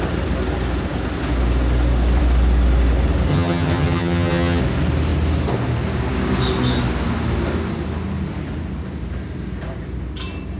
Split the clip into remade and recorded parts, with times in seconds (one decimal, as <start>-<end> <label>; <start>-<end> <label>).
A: 0.0-3.3 recorded; 3.3-4.6 remade; 4.6-10.6 recorded